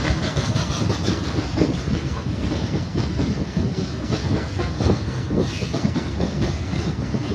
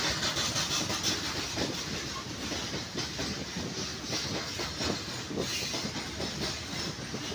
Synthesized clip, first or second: first